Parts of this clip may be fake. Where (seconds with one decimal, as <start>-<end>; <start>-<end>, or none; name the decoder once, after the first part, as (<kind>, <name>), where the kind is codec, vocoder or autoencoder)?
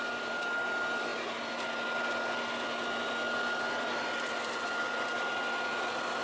none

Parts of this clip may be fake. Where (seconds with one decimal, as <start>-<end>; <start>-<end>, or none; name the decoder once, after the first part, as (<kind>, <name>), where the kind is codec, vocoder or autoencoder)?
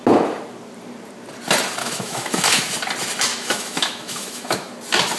1.8-2.7 (autoencoder, DAC-VAE); 3.3-4.7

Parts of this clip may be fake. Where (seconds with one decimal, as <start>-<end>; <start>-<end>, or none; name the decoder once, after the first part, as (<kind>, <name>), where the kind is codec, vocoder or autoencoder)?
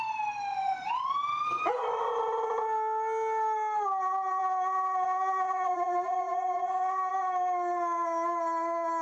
0.5-1.1 (vocoder, Vocos); 4.4-7.1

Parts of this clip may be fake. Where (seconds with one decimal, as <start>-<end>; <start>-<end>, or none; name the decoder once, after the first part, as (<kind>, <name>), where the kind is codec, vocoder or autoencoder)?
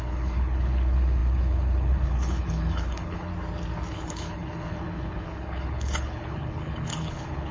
0.0-3.3 (codec, HILCodec); 3.9-7.5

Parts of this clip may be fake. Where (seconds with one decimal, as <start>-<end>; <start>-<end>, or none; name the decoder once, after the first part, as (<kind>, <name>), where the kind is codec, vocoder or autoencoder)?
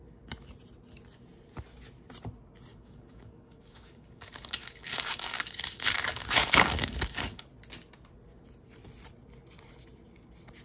2.7-7.5 (codec, DAC)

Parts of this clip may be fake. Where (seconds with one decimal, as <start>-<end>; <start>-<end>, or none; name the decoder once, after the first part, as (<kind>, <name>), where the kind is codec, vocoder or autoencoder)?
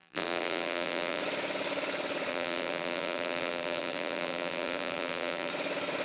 0.0-1.2 (vocoder, BigVGAN v2); 2.3-5.5